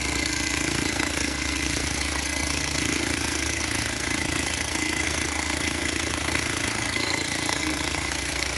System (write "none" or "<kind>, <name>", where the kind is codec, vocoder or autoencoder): codec, SNAC